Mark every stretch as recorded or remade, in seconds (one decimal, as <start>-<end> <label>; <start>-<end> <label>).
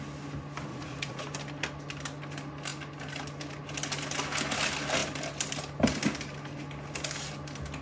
0.0-0.7 recorded; 0.7-1.2 remade; 1.2-7.8 recorded